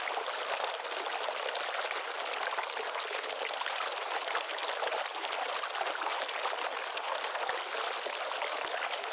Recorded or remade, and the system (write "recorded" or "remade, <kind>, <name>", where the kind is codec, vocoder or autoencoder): recorded